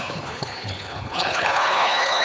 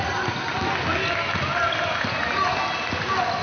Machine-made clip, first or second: first